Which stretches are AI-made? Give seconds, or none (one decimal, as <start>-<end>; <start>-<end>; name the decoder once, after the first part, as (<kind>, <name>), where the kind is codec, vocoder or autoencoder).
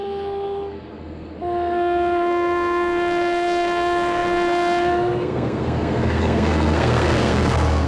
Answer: 0.0-7.9 (codec, SNAC)